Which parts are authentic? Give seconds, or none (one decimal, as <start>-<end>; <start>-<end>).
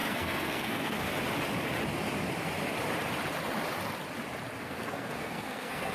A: 1.1-4.6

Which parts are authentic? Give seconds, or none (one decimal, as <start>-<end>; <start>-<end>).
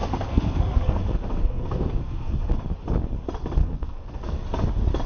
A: 2.5-3.6; 4.4-5.1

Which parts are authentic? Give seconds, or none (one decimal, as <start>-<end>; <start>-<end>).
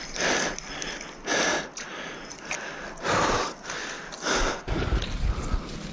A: 0.0-5.9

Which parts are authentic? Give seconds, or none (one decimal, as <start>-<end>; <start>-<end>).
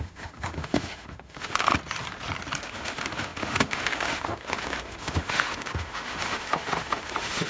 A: 1.7-2.6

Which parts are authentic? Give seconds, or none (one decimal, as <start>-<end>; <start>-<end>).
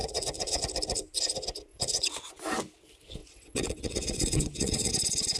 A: 0.6-1.7; 2.3-3.2; 4.9-5.4